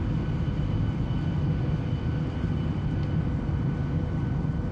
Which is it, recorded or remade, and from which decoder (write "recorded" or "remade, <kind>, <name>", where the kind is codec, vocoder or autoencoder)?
recorded